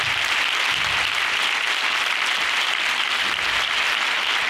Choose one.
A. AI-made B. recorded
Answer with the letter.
B